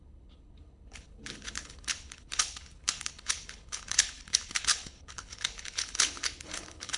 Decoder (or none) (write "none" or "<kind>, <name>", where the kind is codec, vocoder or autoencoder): codec, HILCodec